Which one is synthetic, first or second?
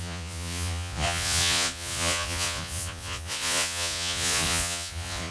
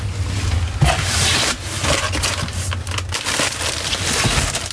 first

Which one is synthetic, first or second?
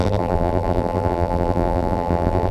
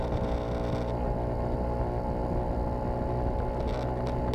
first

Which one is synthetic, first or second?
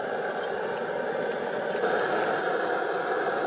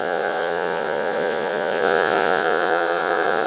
second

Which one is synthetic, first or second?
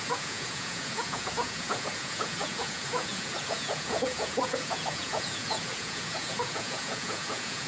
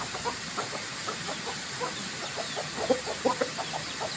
first